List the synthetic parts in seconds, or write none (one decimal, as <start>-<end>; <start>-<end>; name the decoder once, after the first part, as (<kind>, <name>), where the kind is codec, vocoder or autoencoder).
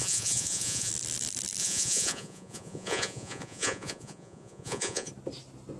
0.0-0.9 (vocoder, Vocos); 1.6-5.1